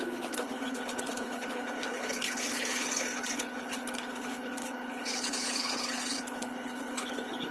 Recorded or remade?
remade